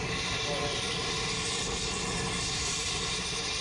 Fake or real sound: fake